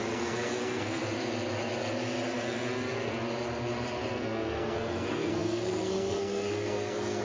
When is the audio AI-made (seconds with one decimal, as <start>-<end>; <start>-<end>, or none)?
0.0-1.0; 4.1-7.2